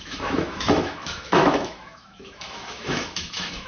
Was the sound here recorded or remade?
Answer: remade